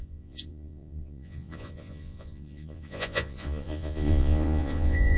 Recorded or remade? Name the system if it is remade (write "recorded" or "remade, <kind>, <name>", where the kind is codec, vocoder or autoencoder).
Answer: remade, vocoder, Vocos